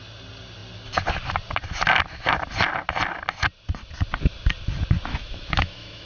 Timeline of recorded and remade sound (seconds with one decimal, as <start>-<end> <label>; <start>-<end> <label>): 0.0-5.1 recorded; 5.1-6.1 remade